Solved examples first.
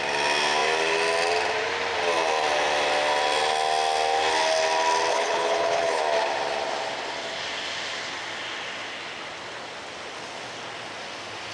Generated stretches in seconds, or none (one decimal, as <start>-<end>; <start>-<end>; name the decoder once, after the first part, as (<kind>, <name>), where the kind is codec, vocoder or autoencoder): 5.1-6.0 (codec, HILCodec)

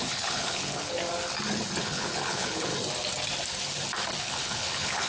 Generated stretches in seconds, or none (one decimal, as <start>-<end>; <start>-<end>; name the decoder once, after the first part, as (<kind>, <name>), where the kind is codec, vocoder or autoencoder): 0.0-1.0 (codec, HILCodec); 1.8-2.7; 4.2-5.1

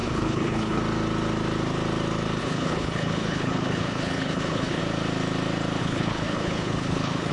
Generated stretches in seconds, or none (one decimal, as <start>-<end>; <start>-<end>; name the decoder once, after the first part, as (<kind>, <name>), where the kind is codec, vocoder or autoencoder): 0.0-0.8 (codec, HILCodec); 2.4-4.8; 5.8-7.3

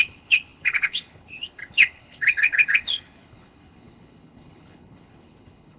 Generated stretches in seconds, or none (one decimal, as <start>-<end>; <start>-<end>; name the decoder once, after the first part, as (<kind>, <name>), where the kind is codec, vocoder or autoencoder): 0.0-5.8 (codec, HILCodec)